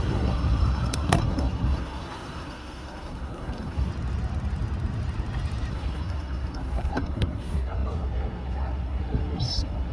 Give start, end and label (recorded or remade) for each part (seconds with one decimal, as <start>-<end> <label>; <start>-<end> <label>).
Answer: 0.0-3.9 remade; 3.9-5.7 recorded; 5.7-9.9 remade